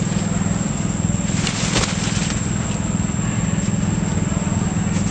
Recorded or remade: recorded